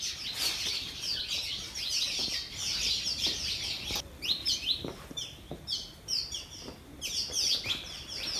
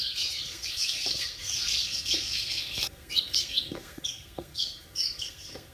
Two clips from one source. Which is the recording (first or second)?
first